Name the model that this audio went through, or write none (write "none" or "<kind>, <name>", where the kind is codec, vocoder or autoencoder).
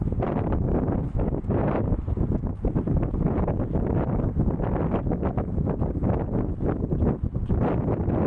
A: none